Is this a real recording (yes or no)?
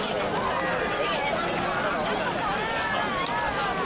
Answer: yes